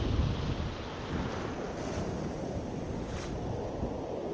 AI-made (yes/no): no